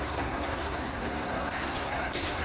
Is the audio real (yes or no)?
no